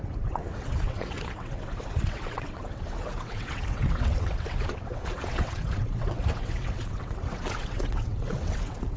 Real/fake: fake